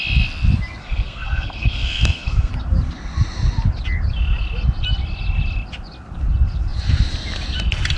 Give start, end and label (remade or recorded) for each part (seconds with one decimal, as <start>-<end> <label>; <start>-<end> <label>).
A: 0.0-0.8 recorded; 0.8-2.5 remade; 2.5-8.0 recorded